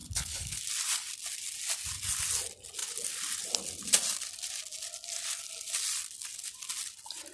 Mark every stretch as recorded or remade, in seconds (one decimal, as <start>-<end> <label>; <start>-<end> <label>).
0.0-0.6 remade; 0.6-7.3 recorded